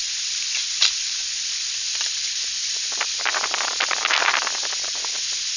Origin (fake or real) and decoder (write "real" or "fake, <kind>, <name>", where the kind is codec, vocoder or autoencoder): fake, vocoder, BigVGAN v2